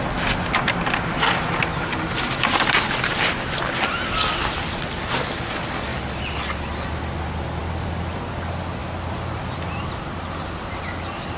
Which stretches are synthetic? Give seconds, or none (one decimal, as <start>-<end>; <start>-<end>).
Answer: 0.0-5.9; 7.1-11.4